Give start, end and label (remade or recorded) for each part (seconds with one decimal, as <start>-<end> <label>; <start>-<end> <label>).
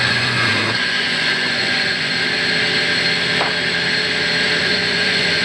0.0-2.1 remade; 2.1-4.6 recorded; 4.6-5.4 remade